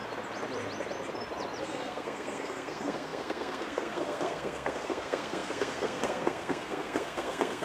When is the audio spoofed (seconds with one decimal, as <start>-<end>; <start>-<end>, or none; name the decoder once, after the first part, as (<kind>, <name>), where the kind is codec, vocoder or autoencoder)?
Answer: 1.6-7.6 (codec, SNAC)